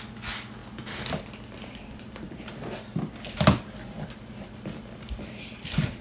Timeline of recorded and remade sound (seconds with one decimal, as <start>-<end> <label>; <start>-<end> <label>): 0.0-6.0 recorded